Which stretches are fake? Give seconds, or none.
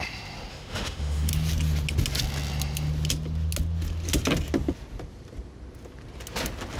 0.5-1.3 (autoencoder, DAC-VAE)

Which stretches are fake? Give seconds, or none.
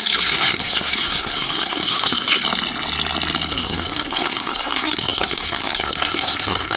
0.0-2.4 (codec, SNAC); 3.5-6.8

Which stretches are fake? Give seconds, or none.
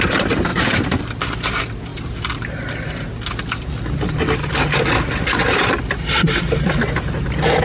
0.5-1.0 (vocoder, BigVGAN v2)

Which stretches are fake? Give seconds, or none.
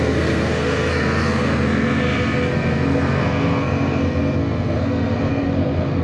0.0-6.0 (codec, SNAC)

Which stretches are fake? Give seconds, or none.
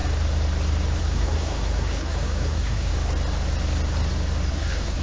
1.0-2.9 (codec, SNAC); 4.5-5.0